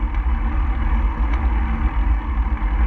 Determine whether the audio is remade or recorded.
recorded